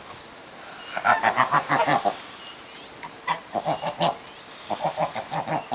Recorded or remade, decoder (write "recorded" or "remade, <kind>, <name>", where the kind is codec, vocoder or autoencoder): recorded